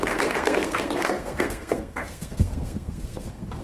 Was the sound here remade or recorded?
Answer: remade